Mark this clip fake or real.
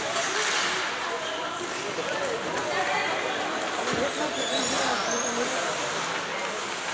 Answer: fake